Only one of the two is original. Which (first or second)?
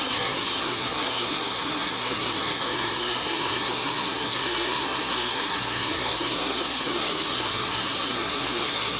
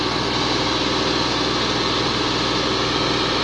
second